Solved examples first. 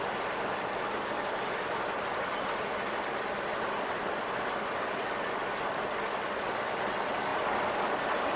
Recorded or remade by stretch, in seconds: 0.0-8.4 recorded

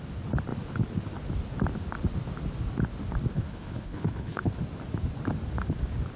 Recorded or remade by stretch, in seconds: 0.0-3.3 recorded; 3.3-4.6 remade; 4.6-6.2 recorded

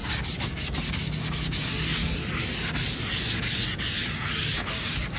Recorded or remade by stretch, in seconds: 0.0-5.2 recorded